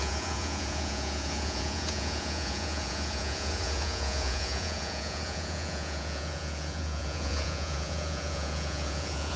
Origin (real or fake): fake